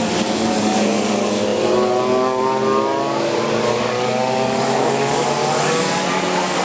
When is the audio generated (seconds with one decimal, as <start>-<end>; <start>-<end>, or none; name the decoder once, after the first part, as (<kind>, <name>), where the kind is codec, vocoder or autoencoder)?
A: 0.0-6.6 (codec, DAC)

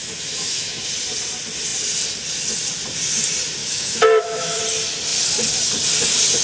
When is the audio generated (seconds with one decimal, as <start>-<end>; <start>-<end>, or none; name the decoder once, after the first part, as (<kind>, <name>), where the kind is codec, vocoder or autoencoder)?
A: 0.0-0.8 (autoencoder, DAC-VAE); 3.6-4.6

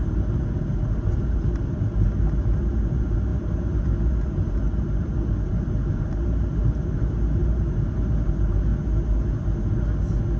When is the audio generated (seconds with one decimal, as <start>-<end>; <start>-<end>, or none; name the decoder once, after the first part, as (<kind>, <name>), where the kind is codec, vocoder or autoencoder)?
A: 0.0-8.7 (vocoder, BigVGAN v2)

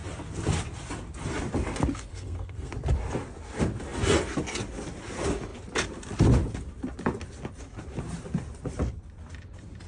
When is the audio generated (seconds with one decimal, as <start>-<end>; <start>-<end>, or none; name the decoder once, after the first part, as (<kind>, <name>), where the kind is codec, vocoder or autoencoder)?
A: 2.1-2.7 (codec, SNAC)

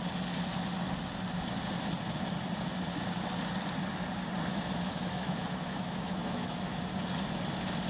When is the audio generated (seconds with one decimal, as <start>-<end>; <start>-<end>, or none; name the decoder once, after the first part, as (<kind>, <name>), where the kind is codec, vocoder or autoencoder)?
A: 4.5-6.8 (autoencoder, DAC-VAE)

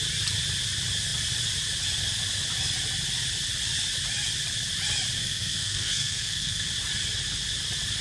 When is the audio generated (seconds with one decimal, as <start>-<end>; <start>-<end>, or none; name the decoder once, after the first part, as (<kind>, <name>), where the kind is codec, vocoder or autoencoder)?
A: 5.2-6.7 (codec, SNAC)

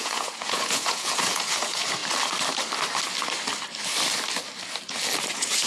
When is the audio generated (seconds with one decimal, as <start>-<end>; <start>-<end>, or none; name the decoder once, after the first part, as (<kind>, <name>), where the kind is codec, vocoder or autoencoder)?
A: 0.0-2.0 (vocoder, Vocos); 5.3-5.7